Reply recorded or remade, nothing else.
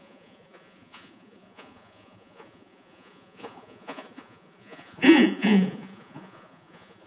remade